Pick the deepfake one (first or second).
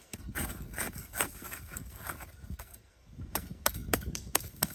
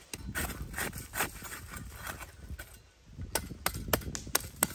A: first